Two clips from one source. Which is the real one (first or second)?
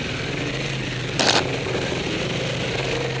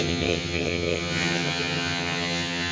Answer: first